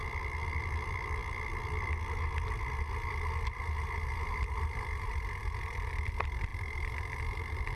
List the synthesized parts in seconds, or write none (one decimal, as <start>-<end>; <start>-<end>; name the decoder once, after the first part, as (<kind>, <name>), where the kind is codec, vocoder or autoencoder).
0.6-1.2 (vocoder, BigVGAN v2); 4.2-7.8